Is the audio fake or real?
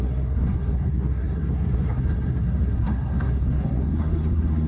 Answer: fake